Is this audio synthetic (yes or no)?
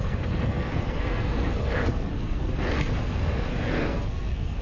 yes